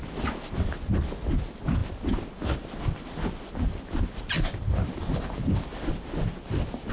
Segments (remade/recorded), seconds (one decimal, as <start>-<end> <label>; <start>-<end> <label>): 0.0-6.9 recorded